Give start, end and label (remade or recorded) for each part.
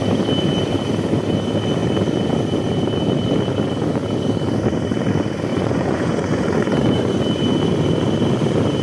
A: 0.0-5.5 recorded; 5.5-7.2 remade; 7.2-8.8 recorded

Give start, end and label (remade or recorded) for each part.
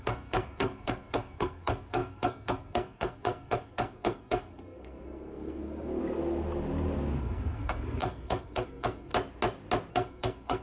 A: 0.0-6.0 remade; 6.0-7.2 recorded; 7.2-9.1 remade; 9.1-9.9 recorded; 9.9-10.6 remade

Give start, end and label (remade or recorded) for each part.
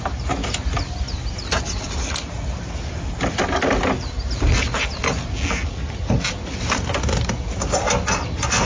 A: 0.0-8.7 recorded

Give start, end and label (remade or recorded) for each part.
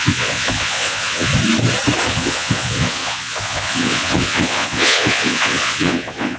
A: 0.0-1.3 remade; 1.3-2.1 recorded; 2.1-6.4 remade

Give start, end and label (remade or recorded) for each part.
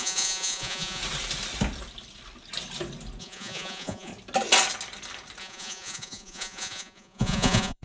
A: 0.0-1.0 remade; 1.0-3.2 recorded; 3.2-4.1 remade; 4.1-5.4 recorded; 5.4-7.8 remade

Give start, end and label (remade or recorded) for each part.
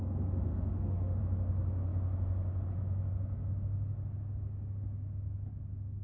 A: 0.0-0.5 recorded; 0.5-1.2 remade; 1.2-6.0 recorded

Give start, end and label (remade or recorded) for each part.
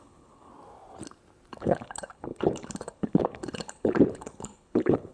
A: 0.0-0.5 remade; 0.5-1.6 recorded; 1.6-5.1 remade